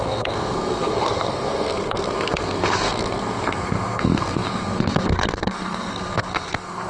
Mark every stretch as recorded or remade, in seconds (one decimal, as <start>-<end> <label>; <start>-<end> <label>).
0.0-6.9 remade